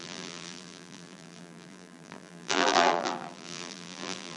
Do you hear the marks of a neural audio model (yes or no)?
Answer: yes